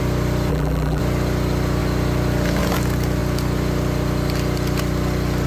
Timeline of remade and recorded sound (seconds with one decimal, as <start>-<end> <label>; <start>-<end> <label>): 0.0-0.5 recorded; 0.5-1.0 remade; 1.0-5.5 recorded